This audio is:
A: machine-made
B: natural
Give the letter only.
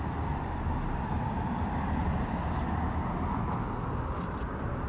B